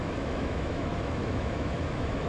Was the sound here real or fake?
fake